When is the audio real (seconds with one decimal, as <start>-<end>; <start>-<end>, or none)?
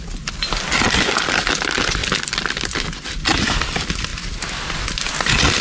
0.0-2.0; 2.5-5.6